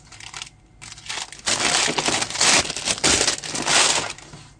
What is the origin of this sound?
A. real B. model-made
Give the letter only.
A